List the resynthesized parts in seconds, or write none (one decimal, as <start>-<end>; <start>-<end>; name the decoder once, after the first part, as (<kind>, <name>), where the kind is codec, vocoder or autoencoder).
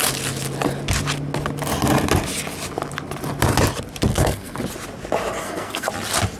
4.1-4.6 (codec, SNAC); 5.4-5.9